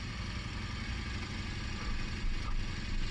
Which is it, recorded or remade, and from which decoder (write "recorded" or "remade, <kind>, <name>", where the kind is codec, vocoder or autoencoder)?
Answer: recorded